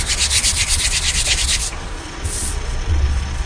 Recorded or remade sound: remade